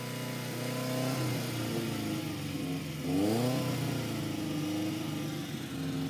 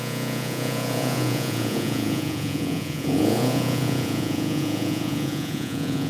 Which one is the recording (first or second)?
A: first